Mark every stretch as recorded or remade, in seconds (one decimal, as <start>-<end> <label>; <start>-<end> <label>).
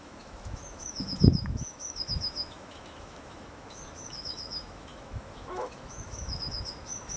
0.0-7.2 remade